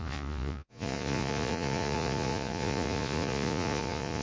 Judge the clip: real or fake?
fake